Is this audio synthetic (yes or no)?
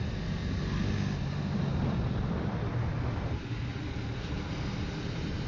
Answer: no